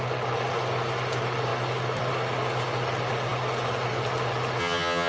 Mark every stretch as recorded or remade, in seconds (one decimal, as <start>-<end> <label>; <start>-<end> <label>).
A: 0.0-4.6 recorded; 4.6-5.1 remade